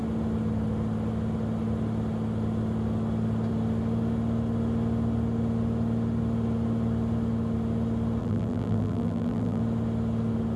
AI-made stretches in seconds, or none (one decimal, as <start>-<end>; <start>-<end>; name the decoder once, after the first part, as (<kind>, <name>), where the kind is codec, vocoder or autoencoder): 8.2-9.6 (vocoder, BigVGAN v2)

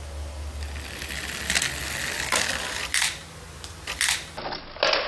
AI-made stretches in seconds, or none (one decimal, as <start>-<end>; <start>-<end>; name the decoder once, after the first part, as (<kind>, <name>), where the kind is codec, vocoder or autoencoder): none

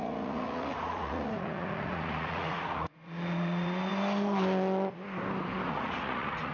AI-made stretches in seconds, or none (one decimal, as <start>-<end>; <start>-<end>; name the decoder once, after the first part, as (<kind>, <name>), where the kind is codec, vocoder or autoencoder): 0.0-3.9 (vocoder, Vocos); 5.7-6.5

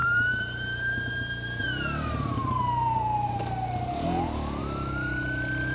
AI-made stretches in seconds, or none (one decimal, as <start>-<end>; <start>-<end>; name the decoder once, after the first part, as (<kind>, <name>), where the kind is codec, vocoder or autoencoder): 0.0-5.7 (vocoder, BigVGAN v2)

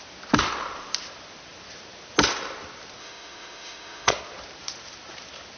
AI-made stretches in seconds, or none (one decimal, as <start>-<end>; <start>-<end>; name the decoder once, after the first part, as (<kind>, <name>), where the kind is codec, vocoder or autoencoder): 3.0-4.1 (autoencoder, DAC-VAE)

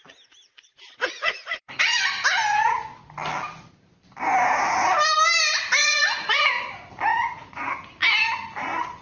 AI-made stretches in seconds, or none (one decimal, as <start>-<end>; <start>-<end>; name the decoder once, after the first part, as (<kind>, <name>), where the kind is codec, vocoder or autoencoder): 0.5-2.0 (vocoder, Vocos); 5.8-6.5; 7.1-7.7

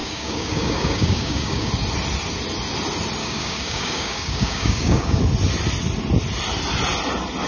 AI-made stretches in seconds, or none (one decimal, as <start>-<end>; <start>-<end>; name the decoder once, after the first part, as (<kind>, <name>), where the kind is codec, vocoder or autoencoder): 0.0-1.7 (codec, DAC); 3.2-5.2